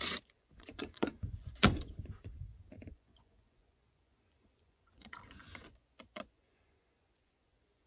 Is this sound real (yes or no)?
no